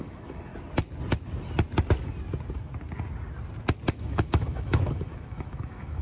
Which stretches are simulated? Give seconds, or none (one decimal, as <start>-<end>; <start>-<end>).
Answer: 0.0-0.5; 3.9-6.0

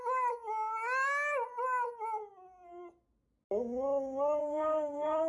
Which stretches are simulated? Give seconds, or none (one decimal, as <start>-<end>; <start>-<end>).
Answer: 4.4-5.3

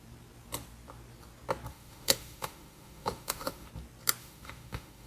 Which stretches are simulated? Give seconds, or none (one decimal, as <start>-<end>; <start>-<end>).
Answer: 1.7-3.7; 4.2-5.1